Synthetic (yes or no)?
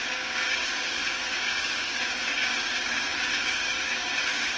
yes